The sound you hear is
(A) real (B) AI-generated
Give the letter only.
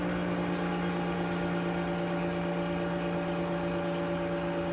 A